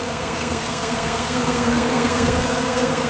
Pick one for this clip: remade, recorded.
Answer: remade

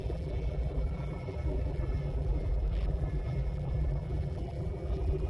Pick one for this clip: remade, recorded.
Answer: remade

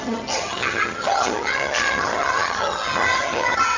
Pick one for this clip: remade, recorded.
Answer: remade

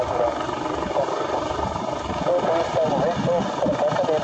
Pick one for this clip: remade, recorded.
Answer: recorded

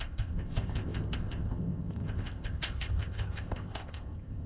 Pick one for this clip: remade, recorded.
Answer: remade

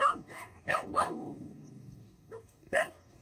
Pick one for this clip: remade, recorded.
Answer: remade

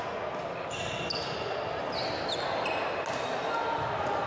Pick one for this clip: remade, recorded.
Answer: recorded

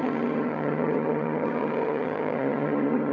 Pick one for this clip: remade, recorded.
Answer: remade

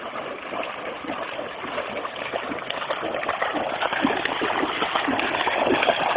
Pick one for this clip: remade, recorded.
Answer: recorded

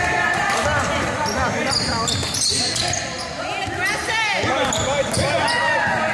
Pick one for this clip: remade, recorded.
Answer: recorded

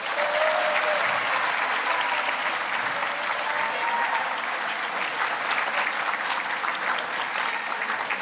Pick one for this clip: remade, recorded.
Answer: recorded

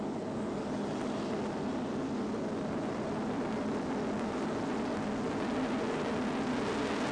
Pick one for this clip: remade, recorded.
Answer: recorded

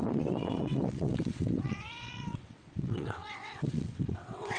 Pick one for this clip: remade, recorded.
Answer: remade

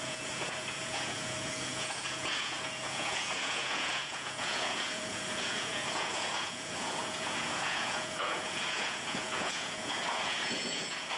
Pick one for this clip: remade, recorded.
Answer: remade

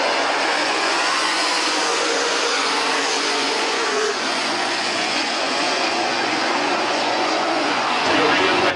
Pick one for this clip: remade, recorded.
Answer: remade